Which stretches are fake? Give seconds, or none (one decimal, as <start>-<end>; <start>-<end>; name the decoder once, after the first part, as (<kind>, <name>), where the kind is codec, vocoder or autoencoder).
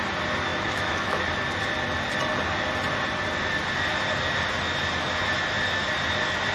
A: 0.5-1.2 (autoencoder, DAC-VAE)